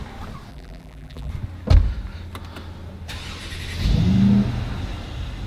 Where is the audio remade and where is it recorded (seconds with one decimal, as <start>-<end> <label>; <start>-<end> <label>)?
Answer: 0.0-0.5 recorded; 0.5-1.3 remade; 1.3-5.5 recorded